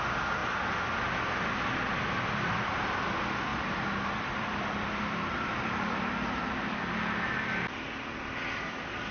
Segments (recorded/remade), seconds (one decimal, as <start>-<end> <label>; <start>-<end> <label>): 0.0-3.5 recorded; 3.5-6.4 remade; 6.4-9.1 recorded